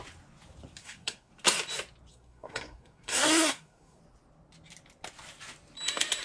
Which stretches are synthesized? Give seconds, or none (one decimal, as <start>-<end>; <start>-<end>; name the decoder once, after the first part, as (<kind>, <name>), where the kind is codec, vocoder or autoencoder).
0.8-1.3 (codec, SNAC); 2.1-4.0